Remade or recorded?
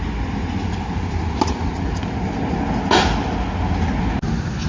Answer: recorded